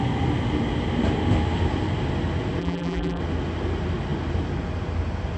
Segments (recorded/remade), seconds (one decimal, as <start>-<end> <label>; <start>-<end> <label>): 0.0-2.6 recorded; 2.6-3.2 remade; 3.2-5.4 recorded